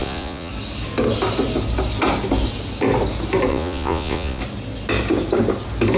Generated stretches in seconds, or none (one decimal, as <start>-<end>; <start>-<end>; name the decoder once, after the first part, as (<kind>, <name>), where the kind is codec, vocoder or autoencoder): 0.0-0.5 (vocoder, Vocos); 3.5-4.4